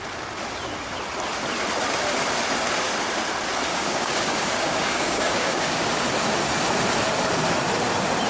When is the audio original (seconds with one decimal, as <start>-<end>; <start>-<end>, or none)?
0.0-3.7; 5.9-8.3